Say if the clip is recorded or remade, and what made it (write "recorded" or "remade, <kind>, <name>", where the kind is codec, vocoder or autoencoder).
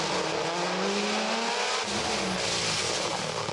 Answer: recorded